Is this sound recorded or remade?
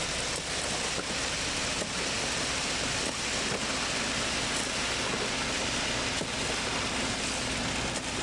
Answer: recorded